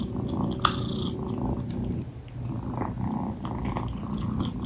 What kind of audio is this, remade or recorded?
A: recorded